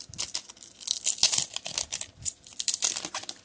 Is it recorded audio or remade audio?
recorded